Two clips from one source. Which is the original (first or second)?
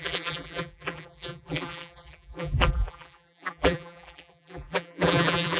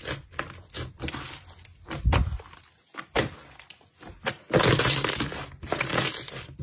second